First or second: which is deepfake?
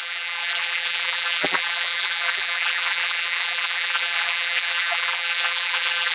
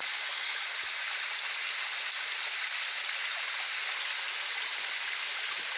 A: first